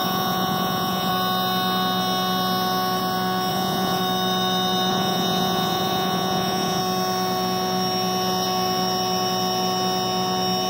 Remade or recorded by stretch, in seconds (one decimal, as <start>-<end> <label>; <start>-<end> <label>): 0.0-1.1 remade; 1.1-3.5 recorded; 3.5-4.0 remade; 4.0-4.9 recorded; 4.9-6.8 remade; 6.8-10.7 recorded